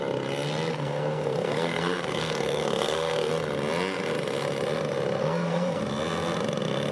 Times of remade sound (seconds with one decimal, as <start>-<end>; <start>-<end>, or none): 0.7-3.3; 5.2-5.8